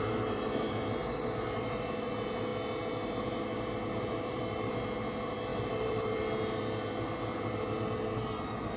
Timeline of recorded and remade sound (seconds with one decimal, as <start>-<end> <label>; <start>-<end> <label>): 0.0-5.5 recorded; 5.5-6.2 remade; 6.2-8.8 recorded